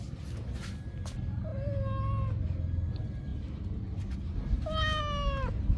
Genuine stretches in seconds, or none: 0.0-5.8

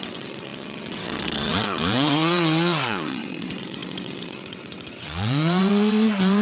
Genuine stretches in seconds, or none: none

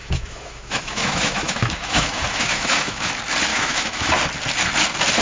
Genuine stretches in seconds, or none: 3.1-3.5; 4.1-5.2

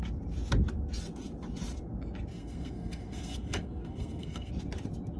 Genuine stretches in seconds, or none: 0.0-2.3; 4.5-5.2